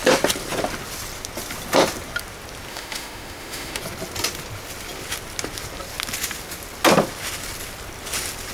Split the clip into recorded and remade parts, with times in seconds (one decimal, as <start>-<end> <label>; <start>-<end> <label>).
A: 0.0-2.7 recorded; 2.7-3.8 remade; 3.8-8.5 recorded